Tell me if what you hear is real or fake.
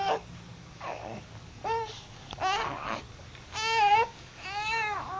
fake